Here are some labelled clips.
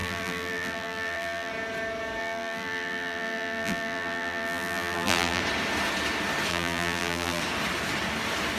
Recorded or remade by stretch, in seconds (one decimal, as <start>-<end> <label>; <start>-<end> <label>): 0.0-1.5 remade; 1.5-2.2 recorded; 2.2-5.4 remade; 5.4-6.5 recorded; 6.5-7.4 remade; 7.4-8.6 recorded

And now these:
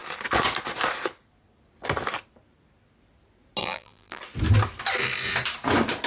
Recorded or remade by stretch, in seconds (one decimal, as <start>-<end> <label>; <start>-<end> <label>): 0.0-3.6 recorded; 3.6-4.2 remade; 4.2-6.1 recorded

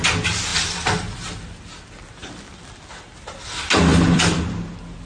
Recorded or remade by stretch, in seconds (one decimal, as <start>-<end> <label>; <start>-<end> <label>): 0.0-0.5 recorded; 0.5-1.6 remade; 1.6-3.9 recorded; 3.9-4.6 remade; 4.6-5.1 recorded